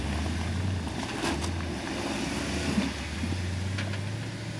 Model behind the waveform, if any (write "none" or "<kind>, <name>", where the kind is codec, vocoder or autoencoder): none